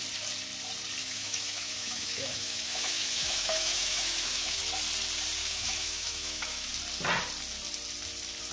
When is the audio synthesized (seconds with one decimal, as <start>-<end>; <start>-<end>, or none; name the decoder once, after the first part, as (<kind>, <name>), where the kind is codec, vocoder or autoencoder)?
1.0-4.6 (autoencoder, DAC-VAE); 5.4-6.7